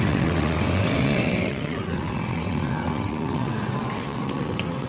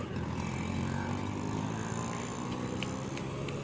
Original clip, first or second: second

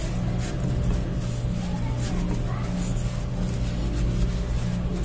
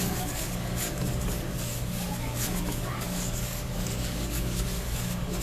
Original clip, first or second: first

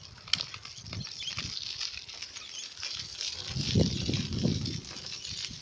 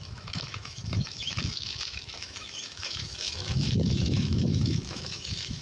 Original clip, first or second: first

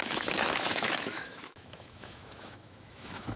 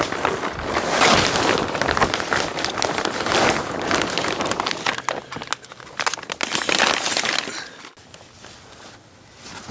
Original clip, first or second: second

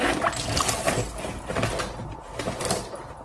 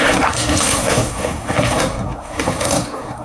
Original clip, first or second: first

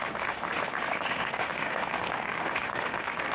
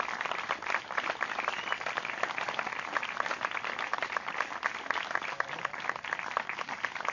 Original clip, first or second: second